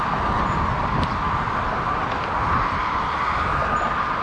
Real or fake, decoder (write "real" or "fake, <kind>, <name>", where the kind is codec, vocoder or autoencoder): real